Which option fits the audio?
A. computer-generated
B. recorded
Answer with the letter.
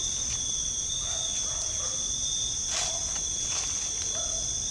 B